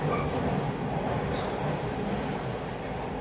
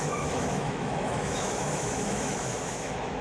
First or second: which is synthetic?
second